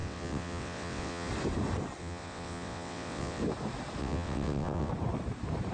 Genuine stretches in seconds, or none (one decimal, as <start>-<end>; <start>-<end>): 1.3-2.0; 3.4-4.0; 4.9-5.7